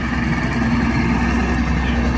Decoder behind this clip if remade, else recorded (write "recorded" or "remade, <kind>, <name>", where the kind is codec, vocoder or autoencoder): recorded